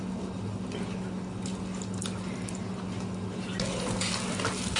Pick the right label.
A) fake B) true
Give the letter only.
B